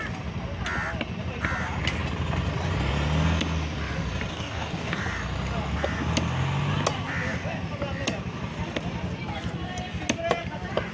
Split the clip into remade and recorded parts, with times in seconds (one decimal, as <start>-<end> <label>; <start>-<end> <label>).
0.0-4.3 recorded; 4.3-5.0 remade; 5.0-10.9 recorded